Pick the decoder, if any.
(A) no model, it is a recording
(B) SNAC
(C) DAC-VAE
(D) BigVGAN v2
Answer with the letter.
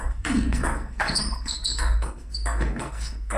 B